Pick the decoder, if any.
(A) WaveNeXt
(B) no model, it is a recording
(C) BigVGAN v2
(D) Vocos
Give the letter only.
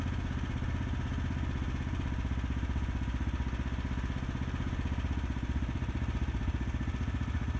B